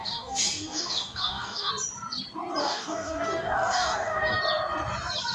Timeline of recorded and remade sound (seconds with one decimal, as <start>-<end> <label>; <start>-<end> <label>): 0.0-1.7 remade; 1.7-2.6 recorded; 2.6-4.4 remade; 4.4-5.3 recorded